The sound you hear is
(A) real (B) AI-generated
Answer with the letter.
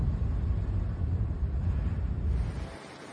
A